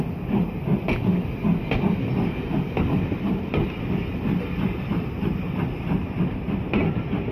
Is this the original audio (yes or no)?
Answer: yes